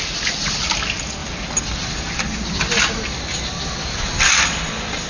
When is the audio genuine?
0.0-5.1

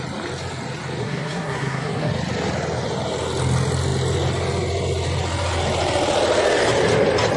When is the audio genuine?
0.0-1.0; 2.1-7.4

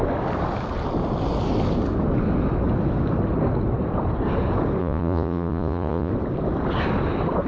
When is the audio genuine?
0.0-4.8; 6.1-7.5

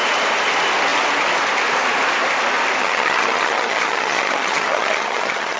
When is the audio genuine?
0.0-2.8